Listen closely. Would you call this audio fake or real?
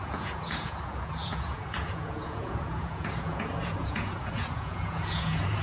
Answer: fake